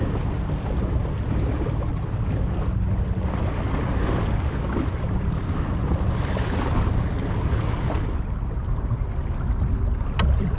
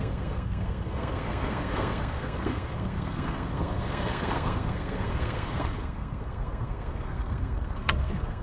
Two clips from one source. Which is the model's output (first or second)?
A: second